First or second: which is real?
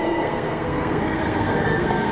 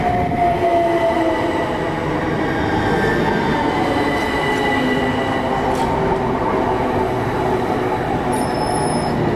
second